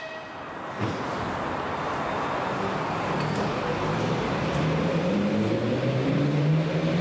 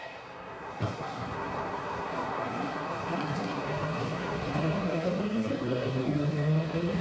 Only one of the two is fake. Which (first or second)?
second